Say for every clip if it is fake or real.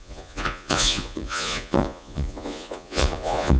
fake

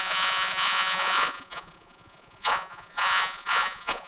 fake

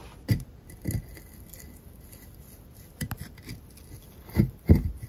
real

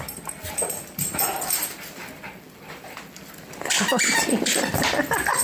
fake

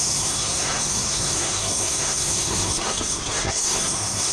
fake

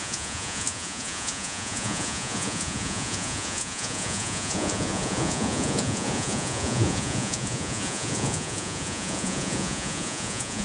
fake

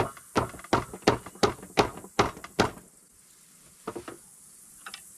real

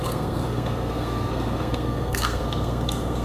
fake